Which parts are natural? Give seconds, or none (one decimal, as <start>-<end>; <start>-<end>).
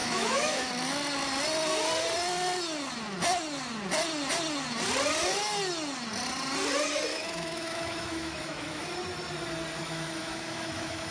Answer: 0.7-7.1; 8.8-9.8